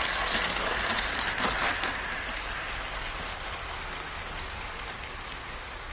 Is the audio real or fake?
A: real